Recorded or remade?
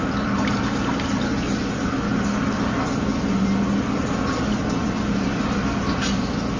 recorded